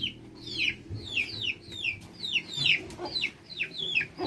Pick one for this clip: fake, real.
real